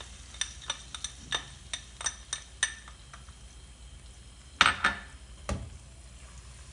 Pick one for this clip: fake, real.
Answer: real